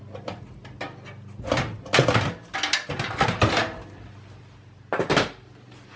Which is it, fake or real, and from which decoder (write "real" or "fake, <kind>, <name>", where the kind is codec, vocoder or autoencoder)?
real